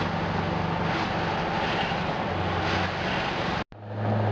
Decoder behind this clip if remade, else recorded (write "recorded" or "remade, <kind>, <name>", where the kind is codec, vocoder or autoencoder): recorded